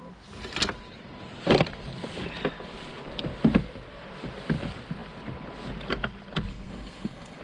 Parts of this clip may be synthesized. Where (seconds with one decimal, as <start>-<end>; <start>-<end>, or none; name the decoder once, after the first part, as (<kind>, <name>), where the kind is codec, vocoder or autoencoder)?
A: 6.5-7.4 (codec, SNAC)